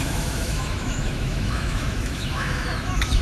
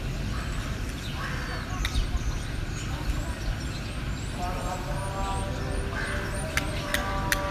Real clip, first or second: second